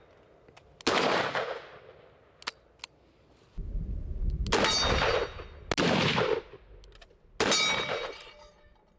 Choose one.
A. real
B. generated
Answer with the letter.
A